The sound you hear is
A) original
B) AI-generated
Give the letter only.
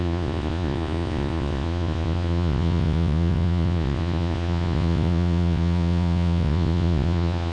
B